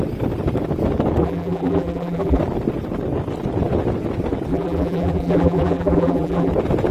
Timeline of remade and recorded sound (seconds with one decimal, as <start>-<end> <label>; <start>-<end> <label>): 0.0-1.2 recorded; 1.2-2.4 remade; 2.4-4.5 recorded; 4.5-6.5 remade; 6.5-6.9 recorded